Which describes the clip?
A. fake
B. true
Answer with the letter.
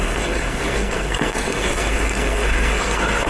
A